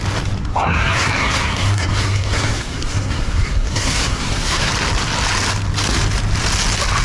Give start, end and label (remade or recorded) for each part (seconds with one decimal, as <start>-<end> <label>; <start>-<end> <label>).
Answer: 0.0-0.5 recorded; 0.5-4.7 remade; 4.7-7.0 recorded